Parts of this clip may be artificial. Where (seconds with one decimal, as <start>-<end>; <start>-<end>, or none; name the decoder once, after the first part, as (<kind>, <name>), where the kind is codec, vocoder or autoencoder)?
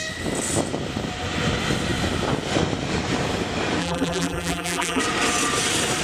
3.8-5.0 (vocoder, BigVGAN v2)